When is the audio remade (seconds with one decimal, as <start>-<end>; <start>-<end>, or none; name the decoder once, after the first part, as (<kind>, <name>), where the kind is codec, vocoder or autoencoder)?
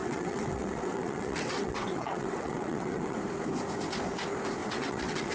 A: 0.0-3.2 (vocoder, WaveNeXt); 4.6-5.3